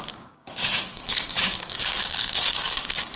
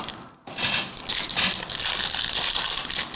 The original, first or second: second